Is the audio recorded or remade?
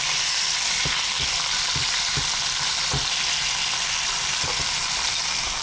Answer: recorded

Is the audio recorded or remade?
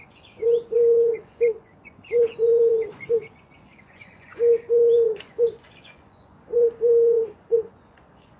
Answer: remade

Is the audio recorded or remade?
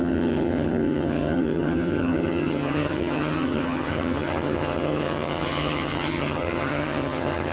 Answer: remade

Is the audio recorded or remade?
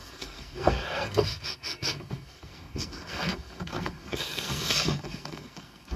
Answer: remade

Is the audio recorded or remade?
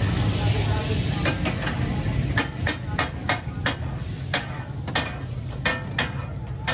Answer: recorded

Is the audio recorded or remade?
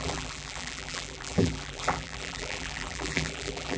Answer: remade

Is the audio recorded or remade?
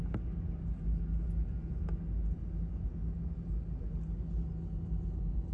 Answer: recorded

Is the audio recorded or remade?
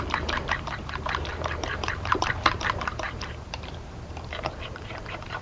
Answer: remade